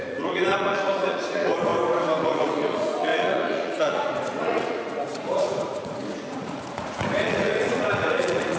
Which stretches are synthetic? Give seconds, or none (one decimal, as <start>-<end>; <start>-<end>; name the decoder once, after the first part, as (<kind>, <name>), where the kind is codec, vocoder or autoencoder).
0.0-1.7 (vocoder, Vocos); 2.2-8.6